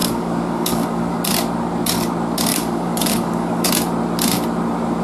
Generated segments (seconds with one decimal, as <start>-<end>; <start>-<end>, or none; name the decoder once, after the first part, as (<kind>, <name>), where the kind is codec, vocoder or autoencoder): 0.0-1.2 (codec, DAC); 2.5-3.7